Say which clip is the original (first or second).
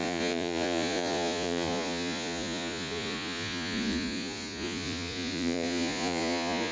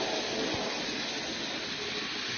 second